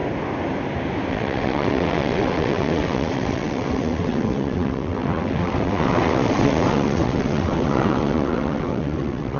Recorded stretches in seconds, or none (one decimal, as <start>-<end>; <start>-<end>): 0.0-1.1